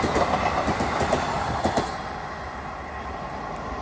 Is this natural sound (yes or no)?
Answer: yes